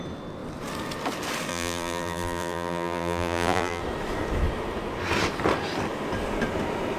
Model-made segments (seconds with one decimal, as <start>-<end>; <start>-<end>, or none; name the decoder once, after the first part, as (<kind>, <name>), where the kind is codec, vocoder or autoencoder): 1.5-3.8 (vocoder, BigVGAN v2)

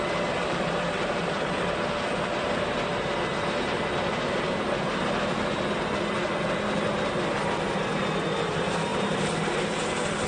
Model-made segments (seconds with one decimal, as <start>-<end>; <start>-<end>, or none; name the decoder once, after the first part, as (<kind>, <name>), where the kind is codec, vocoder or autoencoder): 0.4-1.5 (vocoder, BigVGAN v2); 8.9-9.8

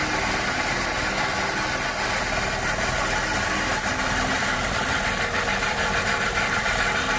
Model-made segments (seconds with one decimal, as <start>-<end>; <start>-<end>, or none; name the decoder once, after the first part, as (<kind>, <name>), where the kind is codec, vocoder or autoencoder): 4.3-7.2 (vocoder, BigVGAN v2)

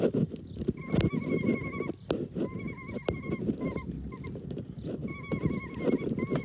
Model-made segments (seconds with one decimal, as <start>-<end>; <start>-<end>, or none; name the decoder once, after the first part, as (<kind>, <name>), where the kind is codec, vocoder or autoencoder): none

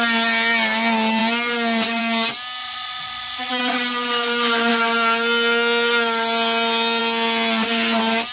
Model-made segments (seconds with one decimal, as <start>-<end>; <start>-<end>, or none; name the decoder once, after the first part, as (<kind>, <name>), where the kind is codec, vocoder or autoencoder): 2.6-3.6 (vocoder, Vocos)

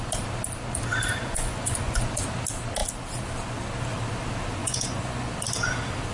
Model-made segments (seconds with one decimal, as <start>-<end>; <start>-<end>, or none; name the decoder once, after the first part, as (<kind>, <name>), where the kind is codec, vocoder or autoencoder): 1.2-2.0 (vocoder, Vocos); 4.6-5.3